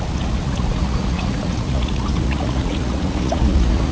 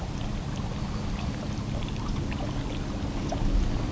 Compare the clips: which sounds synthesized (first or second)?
first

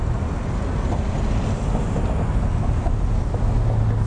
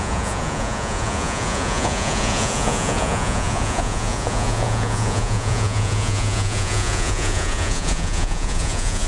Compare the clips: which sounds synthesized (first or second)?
second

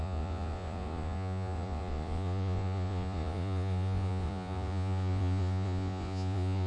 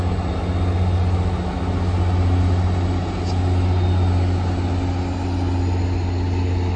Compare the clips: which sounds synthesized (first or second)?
first